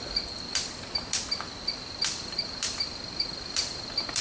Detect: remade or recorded remade